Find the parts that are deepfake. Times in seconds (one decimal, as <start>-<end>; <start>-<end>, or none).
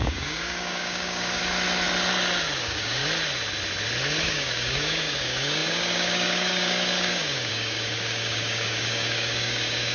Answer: 0.0-1.4; 2.6-3.0; 4.2-9.9